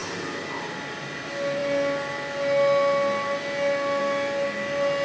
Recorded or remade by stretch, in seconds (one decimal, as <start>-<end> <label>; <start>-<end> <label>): 0.0-5.0 recorded